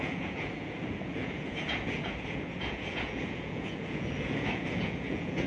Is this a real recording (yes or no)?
no